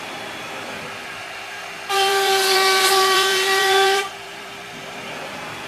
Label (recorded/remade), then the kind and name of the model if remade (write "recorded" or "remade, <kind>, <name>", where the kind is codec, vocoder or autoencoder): remade, vocoder, BigVGAN v2